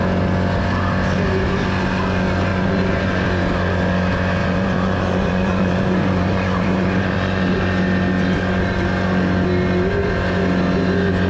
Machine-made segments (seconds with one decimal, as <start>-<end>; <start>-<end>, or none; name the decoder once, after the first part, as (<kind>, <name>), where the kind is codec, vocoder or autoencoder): 2.5-3.2 (vocoder, Vocos); 4.4-7.4